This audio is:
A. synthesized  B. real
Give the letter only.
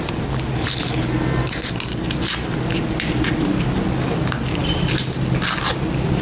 B